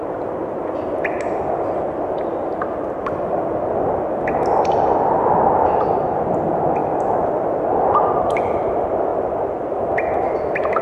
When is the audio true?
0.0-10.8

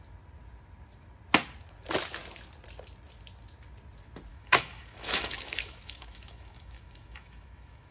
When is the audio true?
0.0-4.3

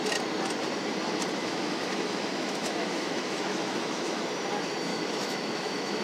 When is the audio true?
0.0-1.4; 4.2-4.9

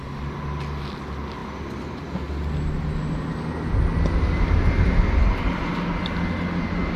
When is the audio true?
0.0-7.0

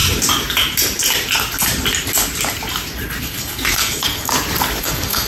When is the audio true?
0.0-3.2; 4.3-4.8

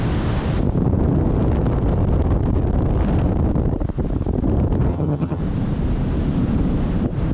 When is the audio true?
0.0-4.9; 5.4-7.3

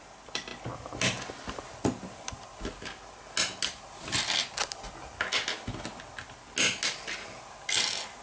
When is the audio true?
0.0-8.2